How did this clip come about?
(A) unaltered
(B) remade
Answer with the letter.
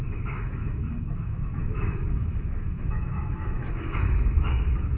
B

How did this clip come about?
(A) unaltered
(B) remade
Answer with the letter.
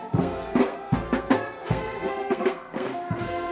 B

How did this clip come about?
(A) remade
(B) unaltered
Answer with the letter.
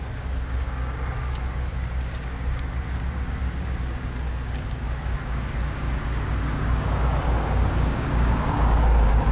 A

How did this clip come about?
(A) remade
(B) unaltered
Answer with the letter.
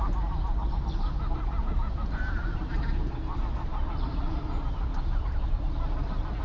B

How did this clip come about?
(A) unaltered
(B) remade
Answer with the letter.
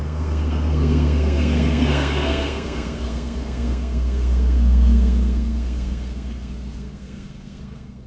B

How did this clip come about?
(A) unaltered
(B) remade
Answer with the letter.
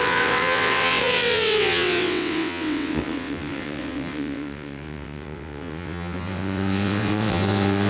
B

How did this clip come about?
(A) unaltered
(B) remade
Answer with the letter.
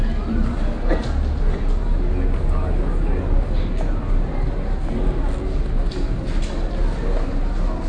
A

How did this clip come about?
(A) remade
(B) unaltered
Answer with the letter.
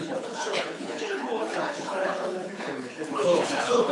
A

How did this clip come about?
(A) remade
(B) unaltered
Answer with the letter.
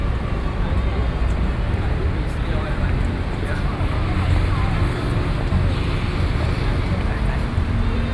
B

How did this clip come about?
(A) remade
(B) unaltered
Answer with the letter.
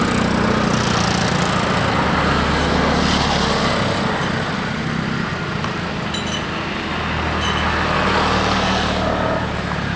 B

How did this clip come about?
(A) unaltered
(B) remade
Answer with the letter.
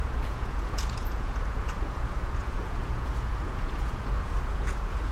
B